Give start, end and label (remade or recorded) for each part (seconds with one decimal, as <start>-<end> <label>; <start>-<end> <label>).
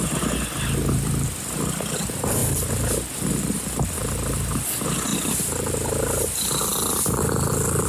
0.0-7.9 recorded